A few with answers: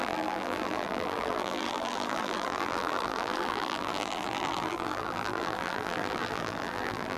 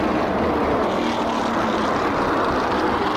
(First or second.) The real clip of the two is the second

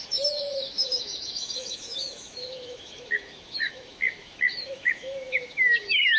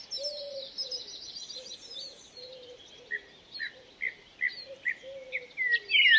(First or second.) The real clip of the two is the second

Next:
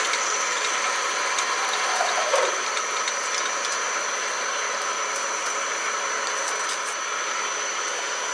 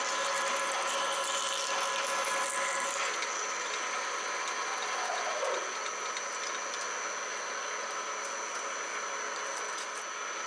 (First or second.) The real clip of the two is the second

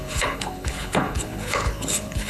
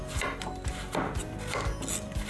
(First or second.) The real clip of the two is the second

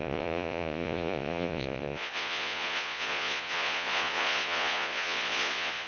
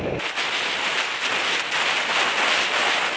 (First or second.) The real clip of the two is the second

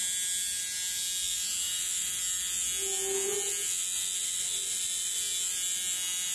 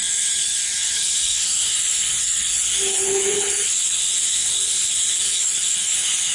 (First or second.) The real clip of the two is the first